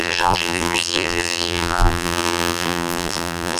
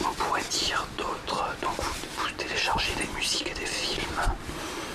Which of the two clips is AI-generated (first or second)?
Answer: first